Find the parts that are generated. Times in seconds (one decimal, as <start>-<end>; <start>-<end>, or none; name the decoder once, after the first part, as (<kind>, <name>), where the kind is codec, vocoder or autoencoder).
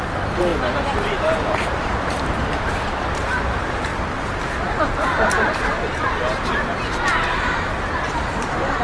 0.0-0.5 (vocoder, BigVGAN v2); 1.2-3.9; 7.3-8.8